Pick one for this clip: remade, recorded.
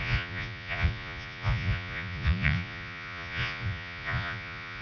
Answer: remade